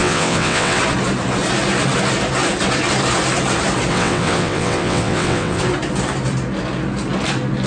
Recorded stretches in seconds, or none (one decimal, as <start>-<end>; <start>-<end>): 0.8-3.9; 5.6-7.7